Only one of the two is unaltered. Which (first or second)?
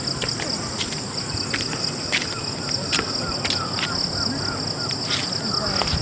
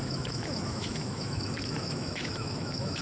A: first